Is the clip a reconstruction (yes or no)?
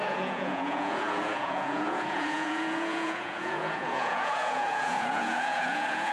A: yes